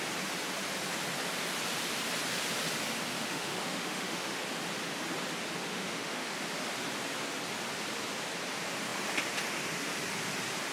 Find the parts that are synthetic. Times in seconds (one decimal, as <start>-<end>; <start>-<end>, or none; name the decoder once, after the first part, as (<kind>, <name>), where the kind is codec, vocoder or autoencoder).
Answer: 3.1-4.4 (autoencoder, DAC-VAE); 5.7-6.3